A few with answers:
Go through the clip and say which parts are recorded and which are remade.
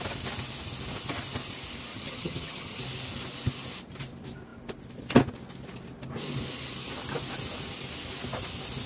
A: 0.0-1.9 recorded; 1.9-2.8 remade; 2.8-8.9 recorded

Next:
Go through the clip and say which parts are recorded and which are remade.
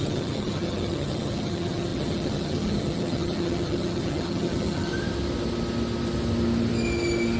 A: 0.0-4.9 remade; 4.9-7.4 recorded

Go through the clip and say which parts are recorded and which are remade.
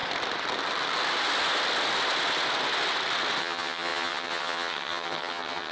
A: 0.0-3.4 recorded; 3.4-5.7 remade